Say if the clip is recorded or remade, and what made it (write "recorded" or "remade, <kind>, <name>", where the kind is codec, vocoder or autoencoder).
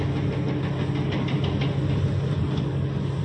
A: recorded